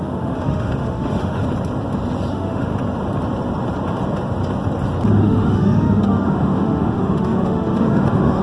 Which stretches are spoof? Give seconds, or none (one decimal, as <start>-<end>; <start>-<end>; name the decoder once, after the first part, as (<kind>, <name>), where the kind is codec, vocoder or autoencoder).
0.0-1.4 (autoencoder, DAC-VAE); 2.3-2.7; 5.2-8.4